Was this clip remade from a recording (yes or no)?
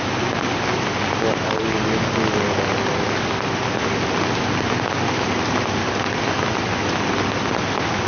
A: no